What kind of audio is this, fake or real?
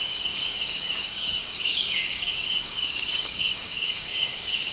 fake